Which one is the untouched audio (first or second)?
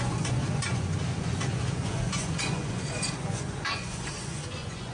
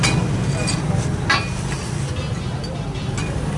second